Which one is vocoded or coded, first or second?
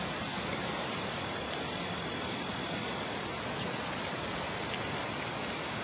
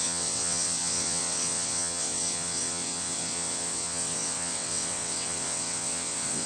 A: second